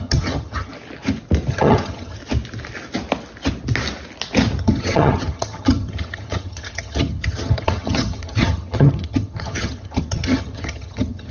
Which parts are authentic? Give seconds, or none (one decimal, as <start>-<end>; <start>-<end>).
0.7-1.5; 2.2-4.6